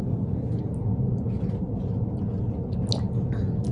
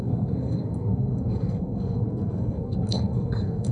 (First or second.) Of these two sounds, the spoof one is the second